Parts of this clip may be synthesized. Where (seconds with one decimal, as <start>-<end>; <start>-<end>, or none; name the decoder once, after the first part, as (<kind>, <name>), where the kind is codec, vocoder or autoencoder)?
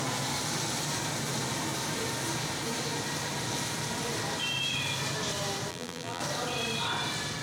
5.7-6.2 (vocoder, BigVGAN v2)